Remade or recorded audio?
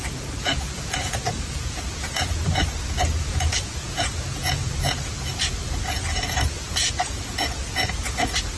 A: remade